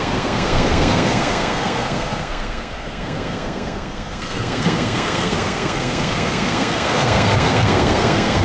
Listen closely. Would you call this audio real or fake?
fake